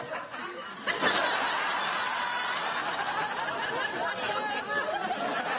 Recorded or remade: recorded